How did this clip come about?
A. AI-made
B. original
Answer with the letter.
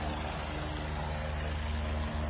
B